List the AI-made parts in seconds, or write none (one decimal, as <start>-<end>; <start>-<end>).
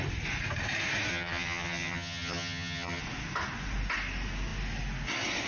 1.1-3.0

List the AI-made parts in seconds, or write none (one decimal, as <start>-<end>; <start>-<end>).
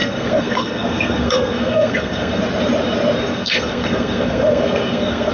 0.0-2.4; 3.3-5.3